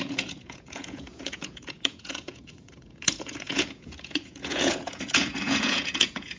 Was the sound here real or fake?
fake